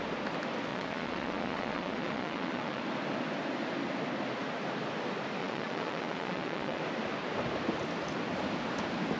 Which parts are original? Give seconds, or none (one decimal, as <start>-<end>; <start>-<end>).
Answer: 0.0-0.7; 2.8-5.4; 6.8-9.2